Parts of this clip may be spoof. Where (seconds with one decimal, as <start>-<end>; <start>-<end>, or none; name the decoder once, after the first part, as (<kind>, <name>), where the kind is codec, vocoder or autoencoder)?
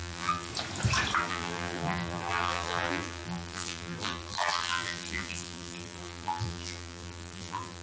0.0-0.5 (vocoder, BigVGAN v2); 1.2-7.8